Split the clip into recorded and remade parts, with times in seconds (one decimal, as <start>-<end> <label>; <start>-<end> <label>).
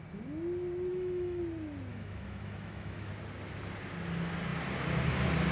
0.0-0.9 recorded; 0.9-1.4 remade; 1.4-1.9 recorded; 1.9-3.1 remade; 3.1-5.5 recorded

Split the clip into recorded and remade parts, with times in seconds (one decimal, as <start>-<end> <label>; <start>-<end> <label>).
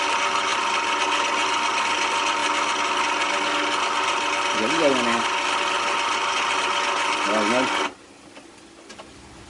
0.0-9.5 recorded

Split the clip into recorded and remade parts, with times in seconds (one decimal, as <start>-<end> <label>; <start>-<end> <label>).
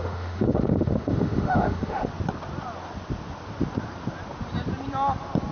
0.0-2.1 remade; 2.1-5.5 recorded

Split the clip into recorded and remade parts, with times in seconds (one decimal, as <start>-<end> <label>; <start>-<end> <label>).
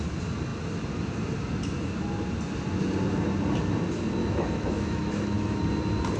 0.0-4.2 recorded; 4.2-5.6 remade; 5.6-6.2 recorded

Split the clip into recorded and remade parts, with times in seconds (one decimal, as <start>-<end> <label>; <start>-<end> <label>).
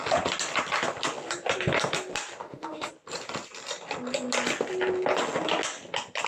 0.0-2.4 recorded; 2.4-2.9 remade; 2.9-6.3 recorded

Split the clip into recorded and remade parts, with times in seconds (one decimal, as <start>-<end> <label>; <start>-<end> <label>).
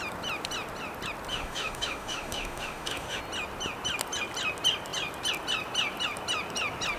0.0-1.3 recorded; 1.3-3.2 remade; 3.2-7.0 recorded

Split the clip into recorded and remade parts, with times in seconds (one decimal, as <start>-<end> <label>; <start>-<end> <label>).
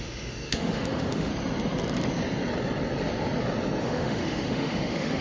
0.0-1.3 remade; 1.3-3.8 recorded; 3.8-5.2 remade